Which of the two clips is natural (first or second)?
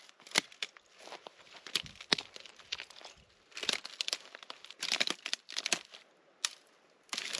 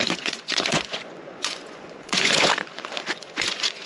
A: first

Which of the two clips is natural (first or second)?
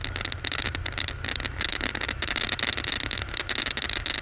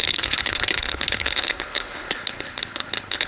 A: first